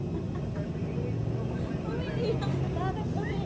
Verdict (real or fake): real